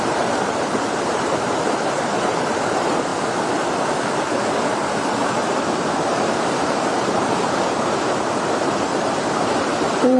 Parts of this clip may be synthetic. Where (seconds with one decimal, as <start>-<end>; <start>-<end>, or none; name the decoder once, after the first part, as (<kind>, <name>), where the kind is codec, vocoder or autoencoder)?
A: 0.0-3.1 (vocoder, BigVGAN v2); 5.0-10.2